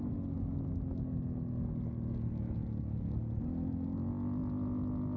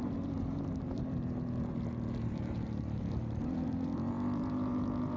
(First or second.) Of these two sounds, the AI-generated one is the second